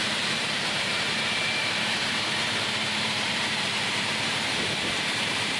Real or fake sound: fake